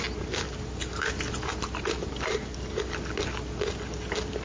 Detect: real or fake real